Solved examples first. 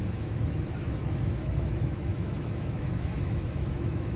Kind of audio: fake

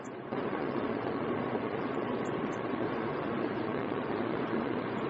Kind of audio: fake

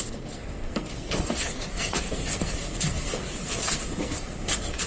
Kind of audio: fake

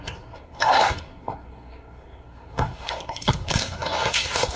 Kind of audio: fake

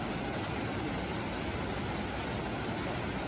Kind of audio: real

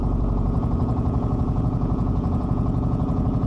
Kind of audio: fake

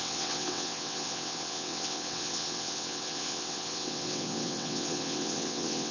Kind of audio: fake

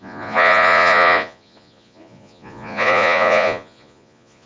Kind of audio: fake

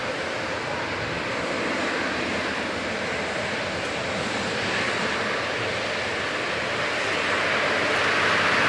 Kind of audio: real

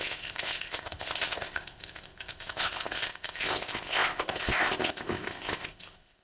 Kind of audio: fake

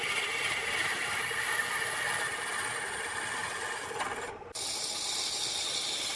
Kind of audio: real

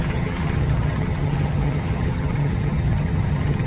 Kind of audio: fake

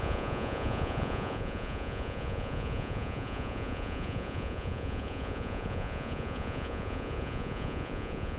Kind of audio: fake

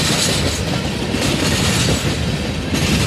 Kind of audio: real